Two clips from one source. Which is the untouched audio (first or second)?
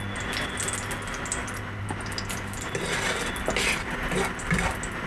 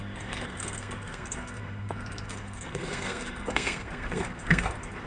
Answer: first